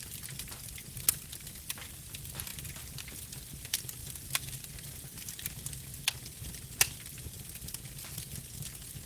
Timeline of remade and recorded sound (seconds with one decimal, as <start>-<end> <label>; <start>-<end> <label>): 0.0-9.1 recorded